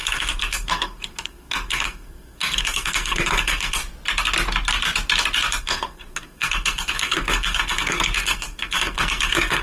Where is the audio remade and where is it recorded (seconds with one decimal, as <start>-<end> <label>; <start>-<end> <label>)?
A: 0.0-3.8 remade; 3.8-5.6 recorded; 5.6-9.6 remade